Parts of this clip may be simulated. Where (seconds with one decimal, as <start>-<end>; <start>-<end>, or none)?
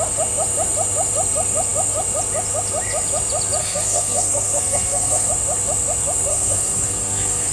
3.6-5.3; 6.3-7.5